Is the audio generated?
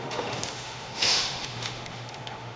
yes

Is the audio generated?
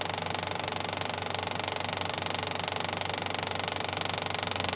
no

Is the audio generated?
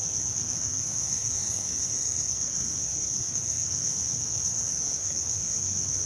yes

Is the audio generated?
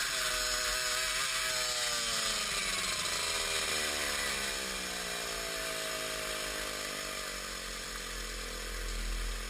no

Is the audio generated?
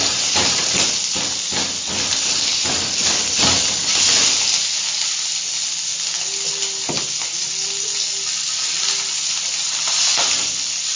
no